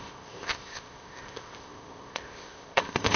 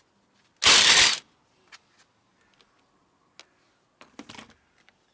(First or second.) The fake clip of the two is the first